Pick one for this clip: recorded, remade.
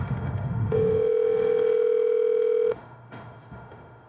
remade